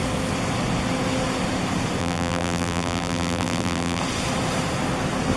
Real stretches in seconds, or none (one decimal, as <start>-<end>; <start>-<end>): 0.0-2.0; 4.0-5.4